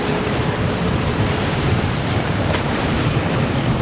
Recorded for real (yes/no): no